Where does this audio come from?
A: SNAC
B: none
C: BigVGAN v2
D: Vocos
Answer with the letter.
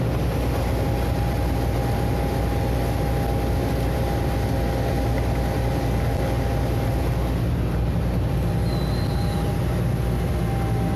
B